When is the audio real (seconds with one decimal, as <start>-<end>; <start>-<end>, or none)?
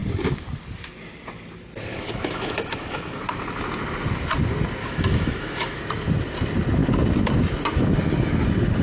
0.0-1.9; 3.2-4.8; 5.8-8.8